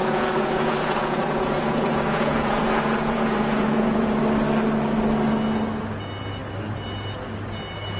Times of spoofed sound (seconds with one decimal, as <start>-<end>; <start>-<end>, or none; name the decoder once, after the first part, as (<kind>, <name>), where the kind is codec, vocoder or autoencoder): 0.0-4.2 (vocoder, Vocos)